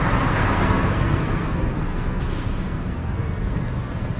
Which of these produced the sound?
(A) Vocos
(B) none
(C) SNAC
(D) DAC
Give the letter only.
C